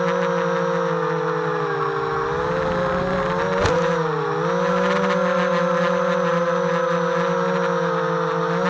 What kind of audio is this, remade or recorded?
recorded